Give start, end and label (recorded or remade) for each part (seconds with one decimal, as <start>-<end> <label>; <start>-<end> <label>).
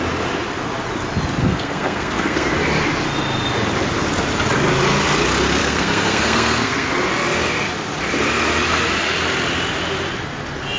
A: 0.0-1.4 recorded; 1.4-2.5 remade; 2.5-5.6 recorded; 5.6-6.9 remade; 6.9-10.8 recorded